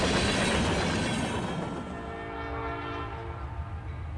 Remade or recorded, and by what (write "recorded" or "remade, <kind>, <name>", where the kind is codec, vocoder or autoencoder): recorded